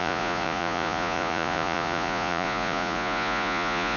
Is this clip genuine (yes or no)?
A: no